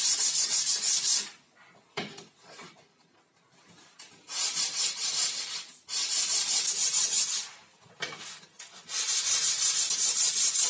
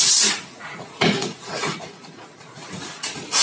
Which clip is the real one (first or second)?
first